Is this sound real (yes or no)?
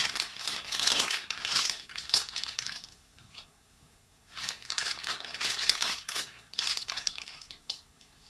no